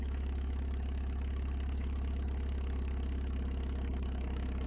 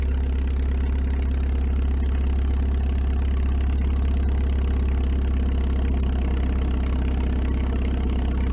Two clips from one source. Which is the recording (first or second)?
second